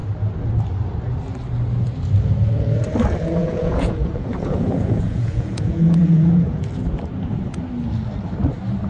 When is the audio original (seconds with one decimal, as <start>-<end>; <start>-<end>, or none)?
0.0-3.4; 6.7-8.9